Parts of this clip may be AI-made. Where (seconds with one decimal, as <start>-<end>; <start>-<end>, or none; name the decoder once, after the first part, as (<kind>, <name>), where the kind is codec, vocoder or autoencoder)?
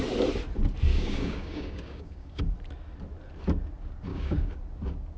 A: 0.9-2.4 (codec, DAC); 4.1-4.6